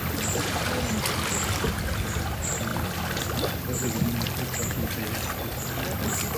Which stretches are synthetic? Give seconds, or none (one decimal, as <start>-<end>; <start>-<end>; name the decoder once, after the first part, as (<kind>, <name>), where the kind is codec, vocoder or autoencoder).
2.7-3.2 (vocoder, BigVGAN v2)